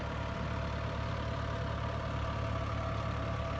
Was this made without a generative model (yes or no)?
yes